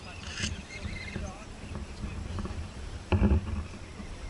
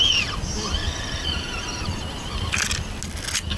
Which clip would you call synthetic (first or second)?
first